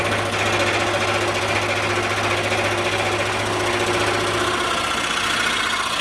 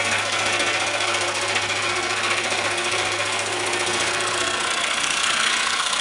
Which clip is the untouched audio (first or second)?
first